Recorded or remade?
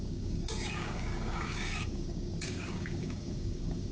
remade